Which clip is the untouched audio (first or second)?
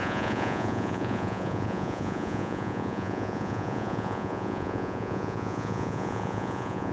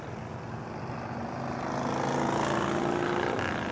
second